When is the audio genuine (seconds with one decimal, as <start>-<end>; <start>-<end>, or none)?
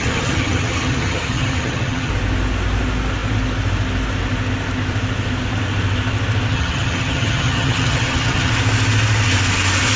2.1-6.5; 8.5-10.0